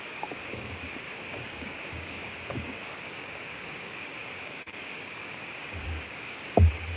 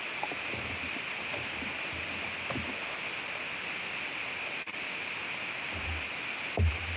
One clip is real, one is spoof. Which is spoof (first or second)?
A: first